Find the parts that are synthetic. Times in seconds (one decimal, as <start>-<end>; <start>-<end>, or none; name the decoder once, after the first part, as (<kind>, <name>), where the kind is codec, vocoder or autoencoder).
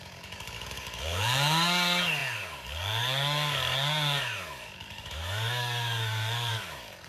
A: 0.0-7.1 (codec, DAC)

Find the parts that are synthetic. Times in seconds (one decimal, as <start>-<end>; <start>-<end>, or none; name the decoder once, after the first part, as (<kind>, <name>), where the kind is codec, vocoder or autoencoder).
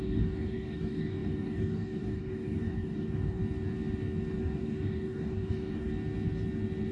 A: 0.0-3.4 (codec, DAC); 4.4-5.9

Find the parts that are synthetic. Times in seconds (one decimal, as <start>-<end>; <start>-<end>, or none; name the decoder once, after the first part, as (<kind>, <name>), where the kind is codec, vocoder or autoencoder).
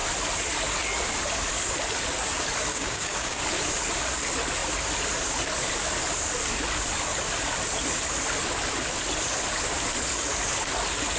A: 2.7-3.4 (codec, DAC)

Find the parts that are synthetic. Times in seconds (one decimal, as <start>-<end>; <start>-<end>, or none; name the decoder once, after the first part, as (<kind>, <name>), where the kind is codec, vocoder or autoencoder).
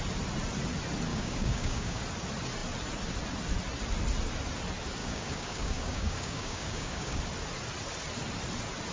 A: 1.1-2.0 (codec, DAC); 5.0-7.2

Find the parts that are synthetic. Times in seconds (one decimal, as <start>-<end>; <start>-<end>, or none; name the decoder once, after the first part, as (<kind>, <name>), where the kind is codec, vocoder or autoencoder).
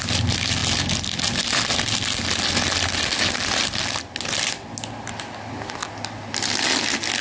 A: none